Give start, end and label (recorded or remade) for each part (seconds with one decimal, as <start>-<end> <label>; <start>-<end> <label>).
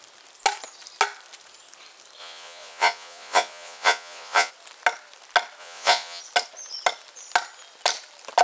0.0-2.2 recorded; 2.2-4.5 remade; 4.5-5.6 recorded; 5.6-6.2 remade; 6.2-8.4 recorded